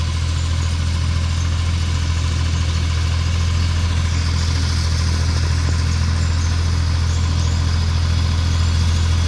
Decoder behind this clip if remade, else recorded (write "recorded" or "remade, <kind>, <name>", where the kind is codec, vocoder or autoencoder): recorded